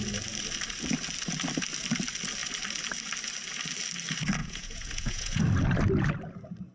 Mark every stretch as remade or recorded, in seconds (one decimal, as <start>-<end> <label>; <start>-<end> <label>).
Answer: 0.0-4.4 recorded; 4.4-5.4 remade; 5.4-6.7 recorded